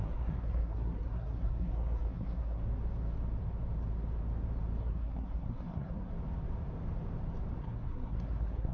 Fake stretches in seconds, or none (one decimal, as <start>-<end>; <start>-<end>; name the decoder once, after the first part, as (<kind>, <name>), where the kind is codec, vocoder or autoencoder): 0.0-2.6 (codec, SNAC); 4.8-6.1; 7.6-8.7